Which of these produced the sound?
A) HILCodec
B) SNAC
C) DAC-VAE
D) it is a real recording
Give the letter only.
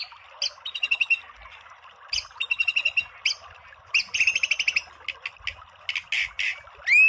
D